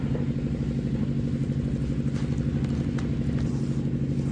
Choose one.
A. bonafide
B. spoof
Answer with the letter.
A